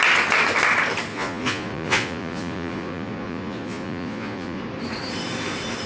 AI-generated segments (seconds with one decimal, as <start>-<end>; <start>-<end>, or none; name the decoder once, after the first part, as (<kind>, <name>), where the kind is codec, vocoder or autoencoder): 1.1-4.6 (vocoder, Vocos)